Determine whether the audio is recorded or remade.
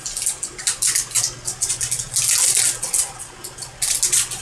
recorded